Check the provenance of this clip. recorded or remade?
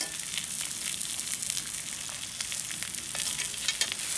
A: recorded